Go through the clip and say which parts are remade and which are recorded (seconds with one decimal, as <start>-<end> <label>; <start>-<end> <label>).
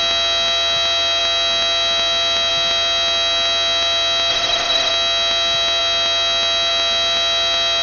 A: 0.0-4.3 recorded; 4.3-4.9 remade; 4.9-7.8 recorded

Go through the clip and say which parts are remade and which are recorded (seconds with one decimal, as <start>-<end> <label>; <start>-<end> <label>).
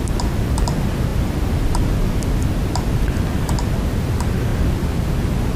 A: 0.0-5.6 recorded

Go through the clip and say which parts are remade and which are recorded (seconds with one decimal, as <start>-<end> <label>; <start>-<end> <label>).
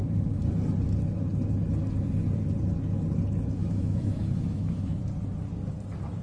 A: 0.0-3.6 recorded; 3.6-5.0 remade; 5.0-6.2 recorded